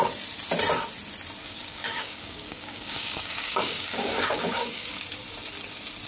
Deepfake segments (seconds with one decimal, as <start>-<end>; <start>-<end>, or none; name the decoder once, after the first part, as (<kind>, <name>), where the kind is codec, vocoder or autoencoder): 1.4-5.0 (codec, DAC)